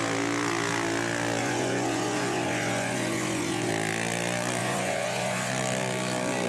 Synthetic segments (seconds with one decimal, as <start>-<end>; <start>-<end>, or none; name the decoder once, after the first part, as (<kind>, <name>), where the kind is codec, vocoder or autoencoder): 1.4-3.7 (vocoder, Vocos); 4.6-5.5